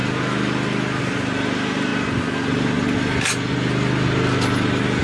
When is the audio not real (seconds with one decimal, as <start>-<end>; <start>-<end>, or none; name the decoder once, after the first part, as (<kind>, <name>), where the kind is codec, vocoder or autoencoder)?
1.0-1.9 (vocoder, BigVGAN v2)

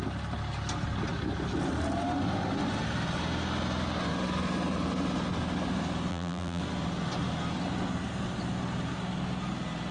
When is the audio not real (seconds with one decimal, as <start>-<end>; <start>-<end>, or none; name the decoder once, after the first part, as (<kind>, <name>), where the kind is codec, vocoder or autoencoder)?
6.1-6.6 (vocoder, BigVGAN v2)

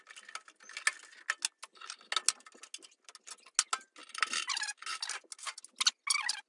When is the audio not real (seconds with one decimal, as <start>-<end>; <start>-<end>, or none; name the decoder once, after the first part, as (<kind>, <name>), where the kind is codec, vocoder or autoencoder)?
none

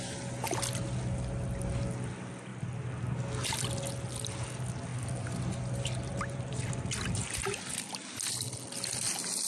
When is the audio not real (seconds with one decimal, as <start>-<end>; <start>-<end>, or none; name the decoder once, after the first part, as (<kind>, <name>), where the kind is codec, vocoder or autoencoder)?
2.5-3.0 (vocoder, BigVGAN v2); 6.1-7.9

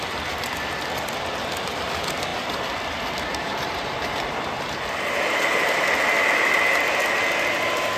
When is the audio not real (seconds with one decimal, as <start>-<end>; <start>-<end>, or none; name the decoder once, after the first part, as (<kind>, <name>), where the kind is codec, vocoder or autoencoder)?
3.3-5.8 (vocoder, BigVGAN v2)